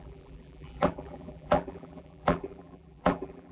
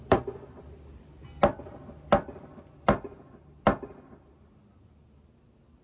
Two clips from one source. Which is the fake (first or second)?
first